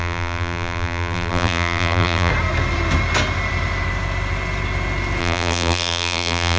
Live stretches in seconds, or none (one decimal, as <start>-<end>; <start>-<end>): 2.3-5.2